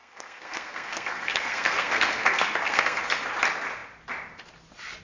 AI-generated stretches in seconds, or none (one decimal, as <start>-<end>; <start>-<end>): 0.0-3.0